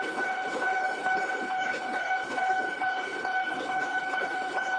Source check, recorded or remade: remade